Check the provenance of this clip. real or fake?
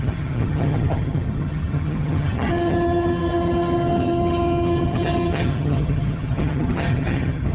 fake